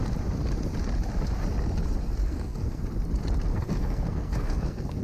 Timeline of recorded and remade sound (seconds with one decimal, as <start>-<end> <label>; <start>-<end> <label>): 0.0-2.2 recorded; 2.2-2.8 remade; 2.8-3.5 recorded; 3.5-5.0 remade